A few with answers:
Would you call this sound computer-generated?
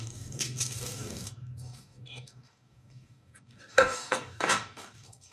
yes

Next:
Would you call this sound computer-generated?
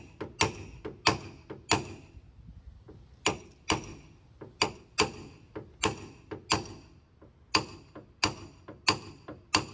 no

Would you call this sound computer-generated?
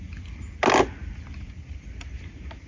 no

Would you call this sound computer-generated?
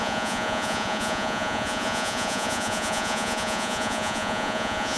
yes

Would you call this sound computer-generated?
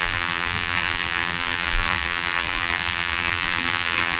yes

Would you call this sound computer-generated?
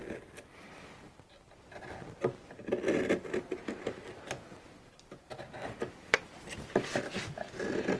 no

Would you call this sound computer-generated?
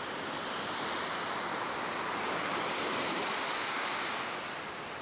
no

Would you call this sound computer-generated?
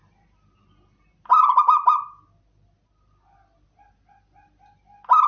no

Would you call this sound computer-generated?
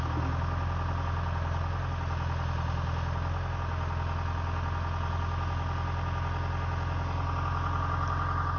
no